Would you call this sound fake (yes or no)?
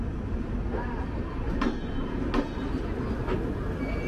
no